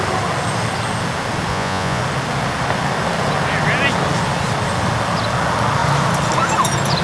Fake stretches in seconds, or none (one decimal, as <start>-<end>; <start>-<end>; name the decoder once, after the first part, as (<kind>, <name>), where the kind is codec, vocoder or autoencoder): 1.5-2.0 (vocoder, Vocos)